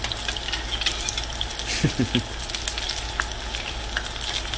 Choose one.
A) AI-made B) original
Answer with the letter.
B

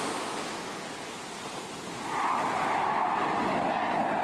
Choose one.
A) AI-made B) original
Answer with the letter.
B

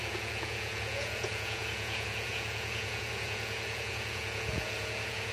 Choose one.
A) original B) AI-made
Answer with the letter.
B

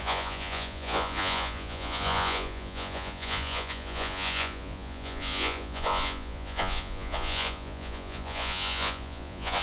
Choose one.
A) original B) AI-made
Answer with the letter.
B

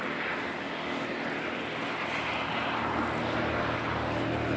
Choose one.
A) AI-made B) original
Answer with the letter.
B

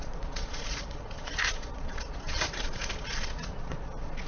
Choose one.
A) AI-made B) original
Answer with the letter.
A